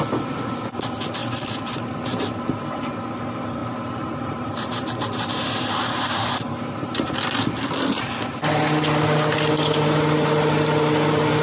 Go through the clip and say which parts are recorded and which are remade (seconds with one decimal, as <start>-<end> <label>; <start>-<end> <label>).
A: 0.0-1.2 recorded; 1.2-2.4 remade; 2.4-3.6 recorded; 3.6-8.0 remade; 8.0-11.4 recorded